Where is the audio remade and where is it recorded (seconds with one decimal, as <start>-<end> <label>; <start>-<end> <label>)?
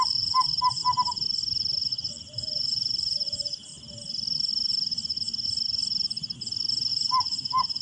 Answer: 0.0-0.8 remade; 0.8-2.1 recorded; 2.1-3.7 remade; 3.7-6.9 recorded; 6.9-7.8 remade